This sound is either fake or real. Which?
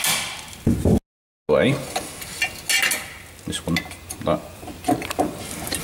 real